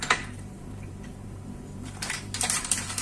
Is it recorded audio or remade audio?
remade